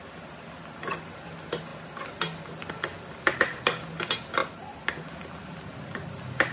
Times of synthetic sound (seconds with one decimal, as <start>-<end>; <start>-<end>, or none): 1.7-2.7